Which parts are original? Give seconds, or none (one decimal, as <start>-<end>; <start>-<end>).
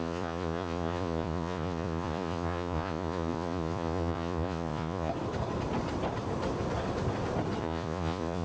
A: 5.1-7.6